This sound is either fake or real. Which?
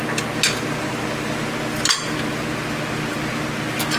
real